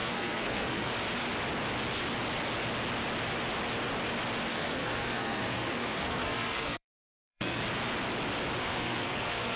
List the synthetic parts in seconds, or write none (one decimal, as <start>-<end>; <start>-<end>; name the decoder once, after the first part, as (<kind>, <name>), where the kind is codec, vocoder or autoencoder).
0.0-0.9 (codec, SNAC); 4.5-7.6; 8.6-9.6